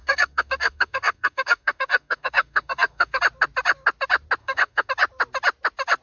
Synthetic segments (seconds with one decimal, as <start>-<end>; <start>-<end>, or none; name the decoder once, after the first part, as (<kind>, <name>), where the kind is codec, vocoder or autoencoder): 0.0-3.2 (codec, SNAC); 4.4-4.9